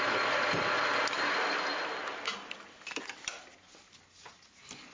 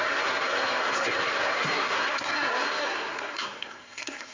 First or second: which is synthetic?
second